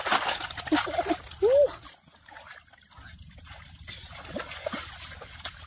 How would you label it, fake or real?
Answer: real